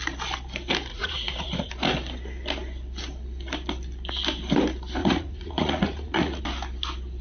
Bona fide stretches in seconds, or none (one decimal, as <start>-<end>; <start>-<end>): 0.0-0.9; 1.7-5.0; 6.4-7.2